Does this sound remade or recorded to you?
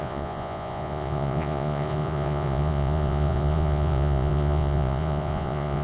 remade